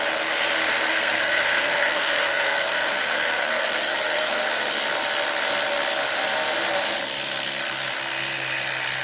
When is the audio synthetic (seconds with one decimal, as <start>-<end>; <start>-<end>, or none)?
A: 0.9-4.4